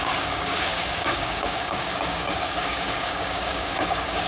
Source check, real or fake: fake